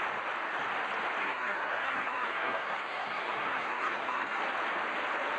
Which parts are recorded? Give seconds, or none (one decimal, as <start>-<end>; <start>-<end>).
0.0-1.2; 4.4-5.4